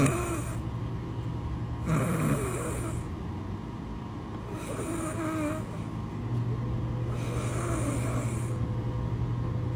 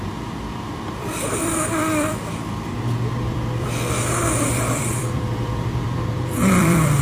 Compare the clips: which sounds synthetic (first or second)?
second